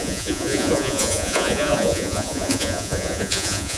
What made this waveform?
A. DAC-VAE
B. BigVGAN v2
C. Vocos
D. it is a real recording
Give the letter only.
C